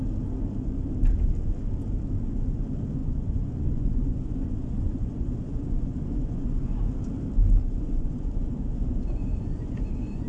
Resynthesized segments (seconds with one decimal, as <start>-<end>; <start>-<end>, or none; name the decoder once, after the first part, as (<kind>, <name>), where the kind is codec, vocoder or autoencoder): 3.0-6.8 (vocoder, Vocos); 7.6-10.3